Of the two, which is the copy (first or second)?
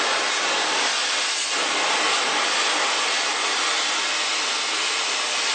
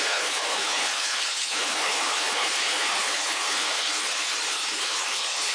second